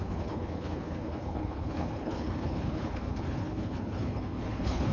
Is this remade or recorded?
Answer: remade